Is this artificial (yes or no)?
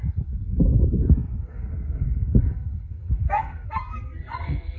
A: yes